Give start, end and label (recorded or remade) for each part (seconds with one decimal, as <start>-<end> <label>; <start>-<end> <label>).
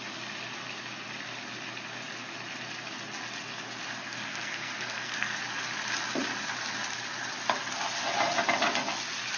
0.0-4.0 recorded; 4.0-5.4 remade; 5.4-9.4 recorded